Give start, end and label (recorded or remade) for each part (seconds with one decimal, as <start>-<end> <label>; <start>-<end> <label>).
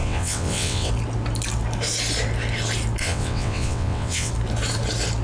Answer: 0.0-0.9 remade; 0.9-3.0 recorded; 3.0-4.3 remade; 4.3-5.2 recorded